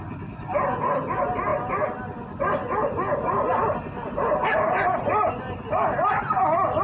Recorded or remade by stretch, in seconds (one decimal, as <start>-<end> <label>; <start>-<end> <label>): 0.0-6.8 recorded